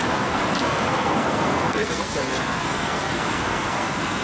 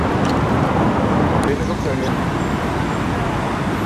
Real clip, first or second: second